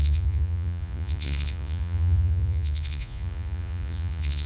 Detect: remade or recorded remade